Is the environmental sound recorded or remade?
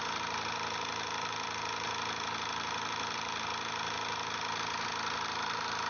recorded